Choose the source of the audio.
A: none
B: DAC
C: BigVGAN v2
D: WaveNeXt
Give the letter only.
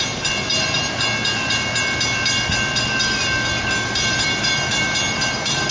A